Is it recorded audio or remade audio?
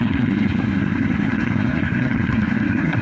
remade